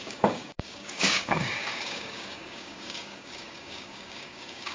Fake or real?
fake